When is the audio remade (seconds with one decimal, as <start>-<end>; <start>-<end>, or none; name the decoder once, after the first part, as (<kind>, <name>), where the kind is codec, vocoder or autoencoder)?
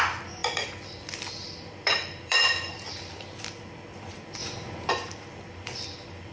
0.0-4.4 (vocoder, BigVGAN v2); 4.9-6.3